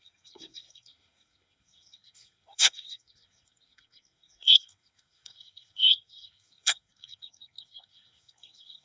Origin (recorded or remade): remade